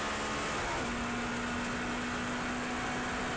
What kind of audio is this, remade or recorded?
recorded